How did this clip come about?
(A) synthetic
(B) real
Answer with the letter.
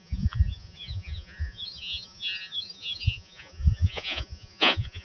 A